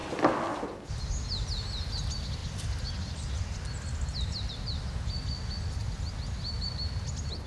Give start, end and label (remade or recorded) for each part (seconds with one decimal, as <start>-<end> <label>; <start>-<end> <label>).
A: 0.0-7.5 recorded